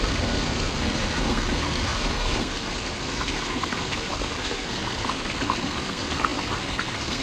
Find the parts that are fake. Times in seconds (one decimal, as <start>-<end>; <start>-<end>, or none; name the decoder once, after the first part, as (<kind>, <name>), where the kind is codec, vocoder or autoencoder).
0.0-7.2 (codec, SNAC)